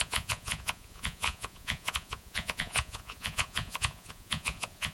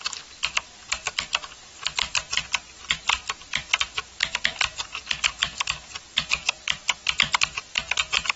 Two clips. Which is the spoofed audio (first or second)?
first